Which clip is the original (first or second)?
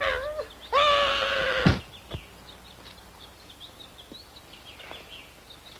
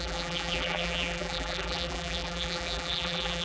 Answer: first